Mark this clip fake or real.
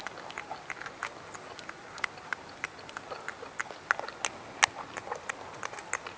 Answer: real